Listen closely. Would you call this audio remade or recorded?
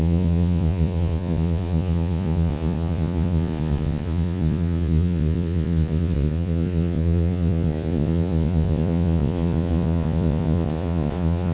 remade